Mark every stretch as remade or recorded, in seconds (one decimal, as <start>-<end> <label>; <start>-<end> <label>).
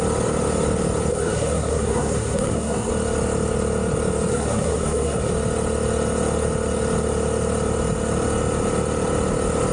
0.0-1.1 recorded; 1.1-2.9 remade; 2.9-4.3 recorded; 4.3-5.3 remade; 5.3-9.7 recorded